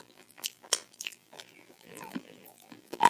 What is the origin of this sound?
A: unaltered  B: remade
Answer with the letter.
B